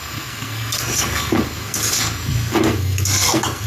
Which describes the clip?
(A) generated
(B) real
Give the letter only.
A